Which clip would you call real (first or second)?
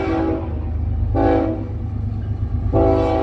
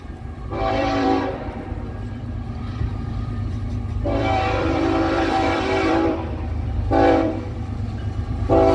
first